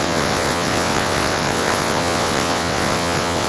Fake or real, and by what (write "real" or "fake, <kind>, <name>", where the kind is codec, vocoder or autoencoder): fake, vocoder, WaveNeXt